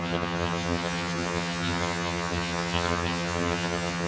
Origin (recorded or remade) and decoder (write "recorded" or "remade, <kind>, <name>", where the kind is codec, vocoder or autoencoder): remade, vocoder, HiFi-GAN